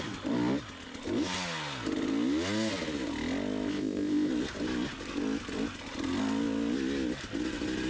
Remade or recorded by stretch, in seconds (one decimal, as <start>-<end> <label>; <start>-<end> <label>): 0.0-3.7 recorded; 3.7-4.3 remade; 4.3-7.9 recorded